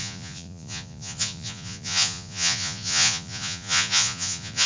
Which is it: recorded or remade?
remade